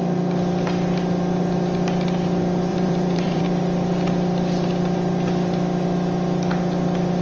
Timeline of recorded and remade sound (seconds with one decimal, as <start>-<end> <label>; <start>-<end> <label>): 0.0-2.7 recorded; 2.7-3.4 remade; 3.4-7.2 recorded